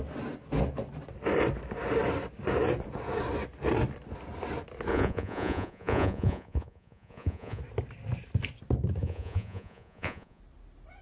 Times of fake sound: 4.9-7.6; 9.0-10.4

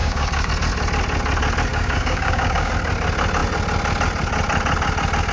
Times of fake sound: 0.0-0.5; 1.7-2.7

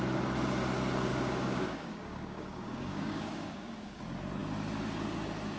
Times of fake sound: 1.1-4.0

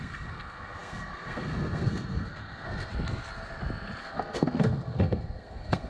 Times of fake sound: 0.0-2.9; 4.0-5.9

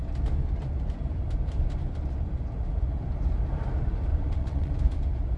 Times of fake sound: 4.1-4.7